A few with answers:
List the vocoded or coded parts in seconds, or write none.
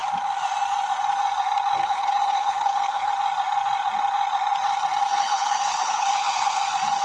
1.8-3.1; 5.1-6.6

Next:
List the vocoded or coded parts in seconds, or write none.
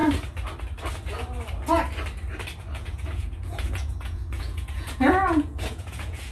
2.7-6.3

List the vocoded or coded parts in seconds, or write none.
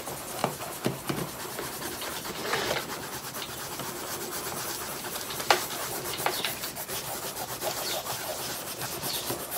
0.4-1.7; 2.1-3.0; 4.9-6.5